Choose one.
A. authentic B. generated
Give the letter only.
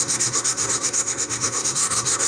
B